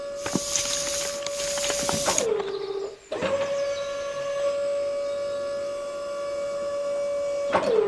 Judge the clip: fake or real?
real